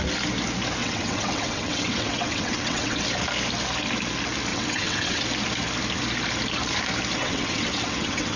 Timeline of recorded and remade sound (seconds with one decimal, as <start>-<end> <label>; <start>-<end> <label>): 0.0-0.8 recorded; 0.8-3.0 remade; 3.0-4.5 recorded; 4.5-5.2 remade; 5.2-7.2 recorded; 7.2-8.4 remade